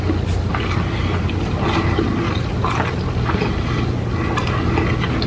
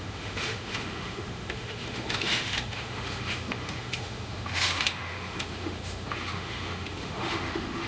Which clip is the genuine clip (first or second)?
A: first